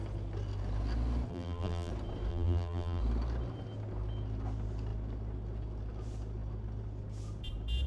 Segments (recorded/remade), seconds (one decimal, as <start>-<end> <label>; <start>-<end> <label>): 0.0-1.3 recorded; 1.3-1.9 remade; 1.9-2.3 recorded; 2.3-3.0 remade; 3.0-7.9 recorded

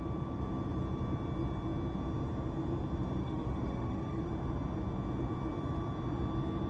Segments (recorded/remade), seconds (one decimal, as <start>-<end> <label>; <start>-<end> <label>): 0.0-3.2 recorded; 3.2-4.3 remade; 4.3-6.7 recorded

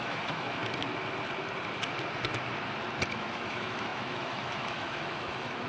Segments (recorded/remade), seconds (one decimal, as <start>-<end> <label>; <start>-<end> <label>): 0.0-0.6 remade; 0.6-3.1 recorded; 3.1-5.7 remade

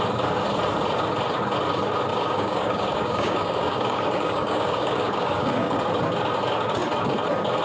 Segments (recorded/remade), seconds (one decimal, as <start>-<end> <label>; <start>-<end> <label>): 0.0-2.1 recorded; 2.1-5.8 remade; 5.8-7.6 recorded

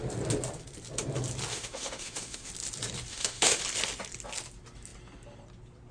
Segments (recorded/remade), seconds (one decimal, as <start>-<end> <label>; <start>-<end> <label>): 0.0-1.5 recorded; 1.5-2.5 remade; 2.5-3.1 recorded; 3.1-3.6 remade; 3.6-5.9 recorded